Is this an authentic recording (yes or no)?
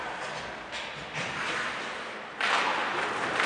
yes